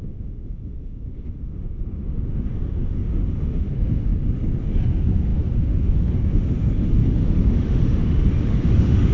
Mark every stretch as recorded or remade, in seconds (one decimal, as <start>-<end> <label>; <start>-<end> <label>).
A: 0.0-4.1 remade; 4.1-4.6 recorded; 4.6-9.1 remade